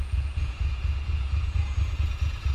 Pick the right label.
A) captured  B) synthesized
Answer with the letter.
B